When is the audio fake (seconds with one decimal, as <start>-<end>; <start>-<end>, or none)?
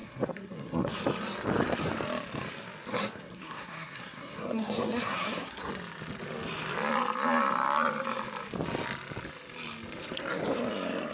0.0-1.0; 2.9-5.7